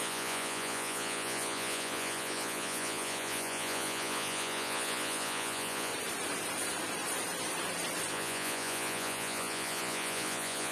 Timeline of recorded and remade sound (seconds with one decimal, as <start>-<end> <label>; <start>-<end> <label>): 0.0-5.9 remade; 5.9-8.1 recorded; 8.1-10.7 remade